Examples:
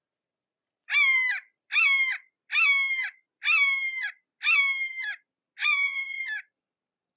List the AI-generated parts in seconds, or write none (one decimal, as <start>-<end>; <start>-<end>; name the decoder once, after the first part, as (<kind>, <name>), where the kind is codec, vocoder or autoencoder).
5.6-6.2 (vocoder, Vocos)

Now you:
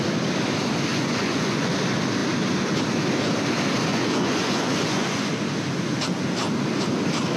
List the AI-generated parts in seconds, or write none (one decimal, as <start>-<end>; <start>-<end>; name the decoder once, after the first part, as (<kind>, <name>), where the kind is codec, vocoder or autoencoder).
0.9-1.7 (vocoder, Vocos); 3.9-5.3

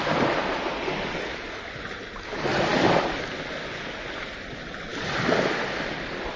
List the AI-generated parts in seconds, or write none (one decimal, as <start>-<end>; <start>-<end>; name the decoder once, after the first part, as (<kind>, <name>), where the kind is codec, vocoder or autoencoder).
none

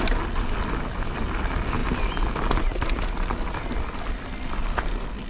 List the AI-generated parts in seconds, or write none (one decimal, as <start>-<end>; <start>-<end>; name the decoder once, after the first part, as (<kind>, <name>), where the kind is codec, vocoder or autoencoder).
none